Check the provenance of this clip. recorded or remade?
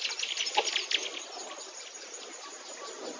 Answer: recorded